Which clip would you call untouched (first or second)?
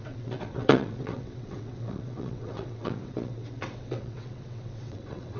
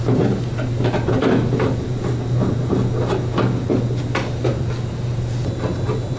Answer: second